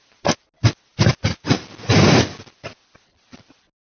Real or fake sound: real